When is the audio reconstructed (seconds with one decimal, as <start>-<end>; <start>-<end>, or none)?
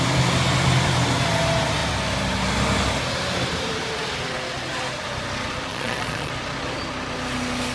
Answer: 5.7-6.3